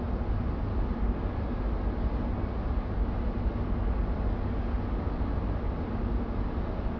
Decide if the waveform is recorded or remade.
recorded